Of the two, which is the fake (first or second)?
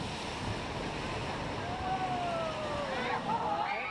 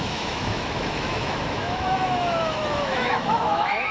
second